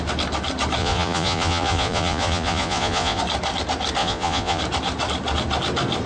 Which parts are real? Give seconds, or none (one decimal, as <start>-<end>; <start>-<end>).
0.0-0.8; 3.2-4.0; 4.6-6.1